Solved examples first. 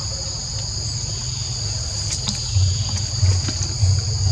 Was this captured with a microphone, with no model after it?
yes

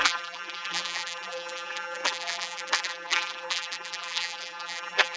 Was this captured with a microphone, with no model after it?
no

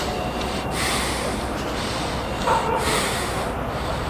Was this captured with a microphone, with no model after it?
yes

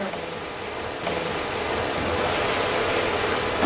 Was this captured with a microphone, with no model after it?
yes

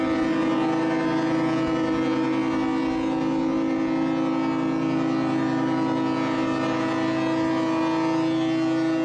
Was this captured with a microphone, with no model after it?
yes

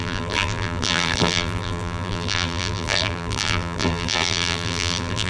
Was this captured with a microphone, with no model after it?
no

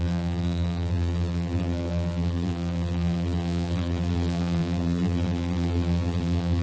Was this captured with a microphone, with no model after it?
no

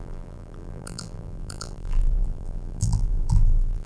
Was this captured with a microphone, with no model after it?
no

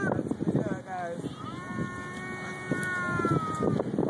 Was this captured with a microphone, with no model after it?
yes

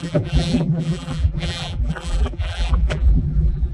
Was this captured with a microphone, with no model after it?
no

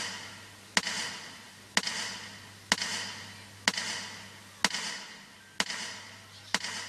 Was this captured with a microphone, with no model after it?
yes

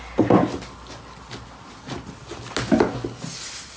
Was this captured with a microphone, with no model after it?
yes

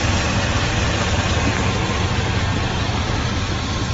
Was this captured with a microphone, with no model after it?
yes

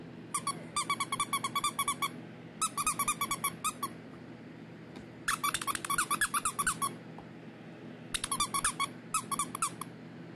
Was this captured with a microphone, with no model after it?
yes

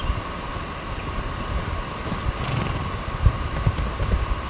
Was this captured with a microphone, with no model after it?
no